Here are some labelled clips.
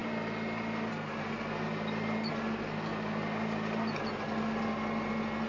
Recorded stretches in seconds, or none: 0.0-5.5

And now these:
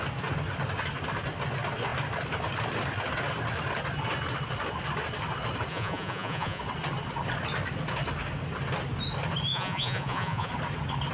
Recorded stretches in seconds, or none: 0.0-5.7; 6.6-9.5; 10.5-11.1

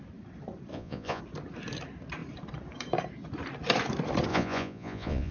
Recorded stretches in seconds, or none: 0.0-0.7; 1.2-4.3

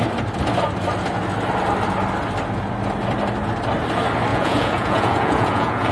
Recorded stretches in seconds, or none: 0.0-4.3

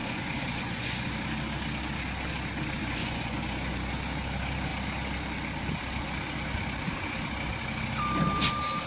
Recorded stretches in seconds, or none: 1.1-2.8; 3.9-8.9

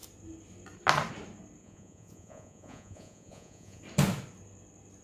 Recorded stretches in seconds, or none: 0.0-1.6; 3.8-5.0